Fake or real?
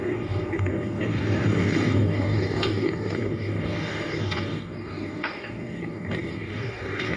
fake